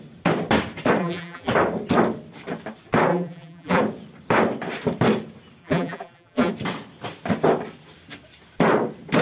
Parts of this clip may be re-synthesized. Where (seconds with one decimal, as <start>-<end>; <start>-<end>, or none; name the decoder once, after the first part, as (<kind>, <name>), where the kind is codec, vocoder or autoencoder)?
1.0-1.5 (vocoder, BigVGAN v2); 3.1-3.8; 5.6-6.5